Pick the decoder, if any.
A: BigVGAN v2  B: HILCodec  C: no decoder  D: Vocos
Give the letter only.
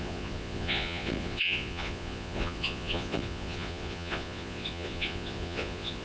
D